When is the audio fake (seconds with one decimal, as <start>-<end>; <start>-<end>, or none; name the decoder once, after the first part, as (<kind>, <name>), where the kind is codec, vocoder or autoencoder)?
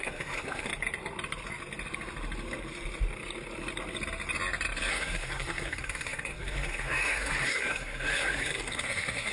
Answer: 0.0-0.7 (codec, SNAC); 4.9-9.3